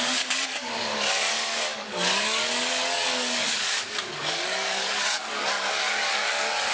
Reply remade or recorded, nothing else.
remade